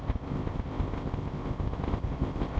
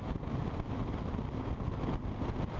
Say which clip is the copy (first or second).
first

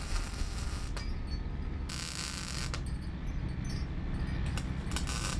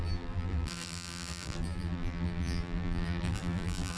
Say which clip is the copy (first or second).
second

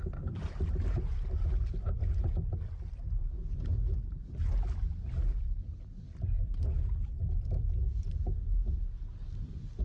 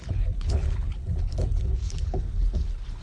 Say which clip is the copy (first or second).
second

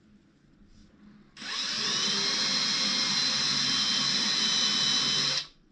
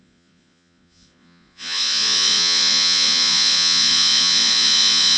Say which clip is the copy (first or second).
second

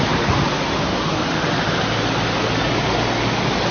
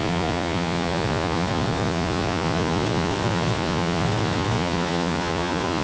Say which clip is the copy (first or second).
second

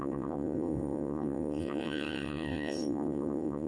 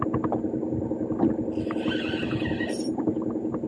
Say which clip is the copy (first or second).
first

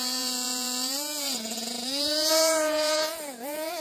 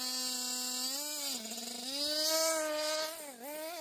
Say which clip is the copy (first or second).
first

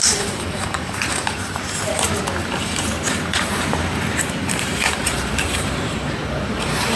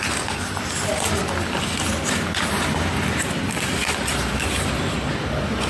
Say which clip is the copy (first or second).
first